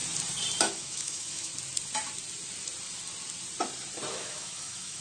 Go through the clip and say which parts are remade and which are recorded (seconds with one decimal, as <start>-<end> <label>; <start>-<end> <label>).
0.0-0.6 recorded; 0.6-1.5 remade; 1.5-4.1 recorded; 4.1-5.0 remade